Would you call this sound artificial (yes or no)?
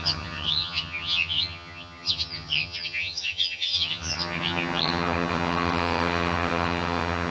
yes